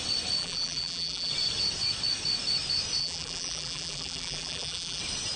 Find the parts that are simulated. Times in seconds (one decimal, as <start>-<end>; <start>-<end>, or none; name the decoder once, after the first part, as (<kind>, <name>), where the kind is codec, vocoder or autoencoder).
0.4-1.3 (vocoder, BigVGAN v2); 3.0-5.0